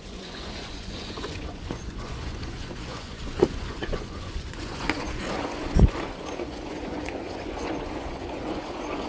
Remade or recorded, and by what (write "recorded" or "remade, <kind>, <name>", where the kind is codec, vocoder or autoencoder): remade, vocoder, Vocos